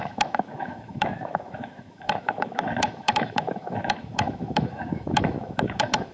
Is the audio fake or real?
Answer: fake